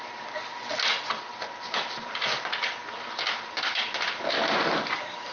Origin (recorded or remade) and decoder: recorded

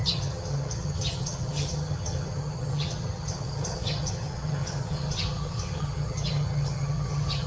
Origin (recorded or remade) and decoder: remade, vocoder, HiFi-GAN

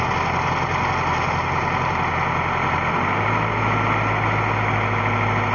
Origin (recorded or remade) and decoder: recorded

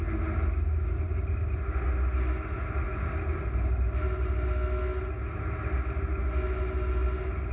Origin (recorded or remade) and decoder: recorded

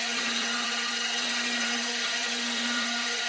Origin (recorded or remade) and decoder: remade, vocoder, HiFi-GAN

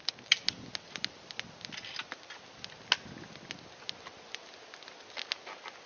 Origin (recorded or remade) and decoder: recorded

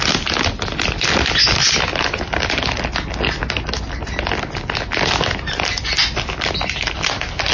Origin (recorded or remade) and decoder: recorded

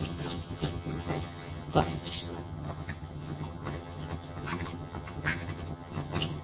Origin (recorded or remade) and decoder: remade, vocoder, HiFi-GAN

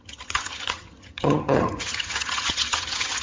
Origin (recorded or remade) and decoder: remade, vocoder, HiFi-GAN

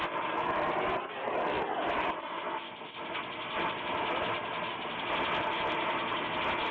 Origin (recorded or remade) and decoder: recorded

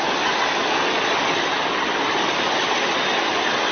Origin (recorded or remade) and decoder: recorded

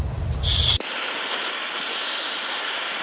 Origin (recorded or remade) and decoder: recorded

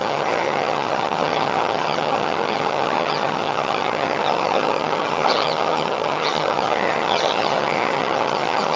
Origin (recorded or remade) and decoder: remade, vocoder, HiFi-GAN